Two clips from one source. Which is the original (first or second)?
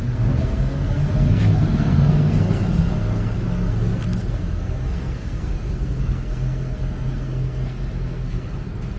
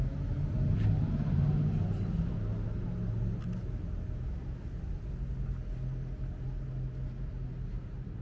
second